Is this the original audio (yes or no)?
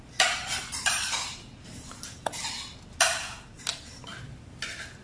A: yes